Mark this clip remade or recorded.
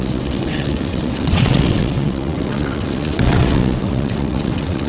remade